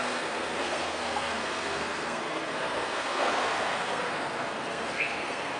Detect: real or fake fake